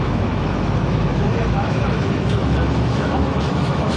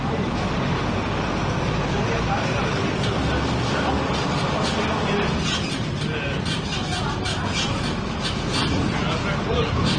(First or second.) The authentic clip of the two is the second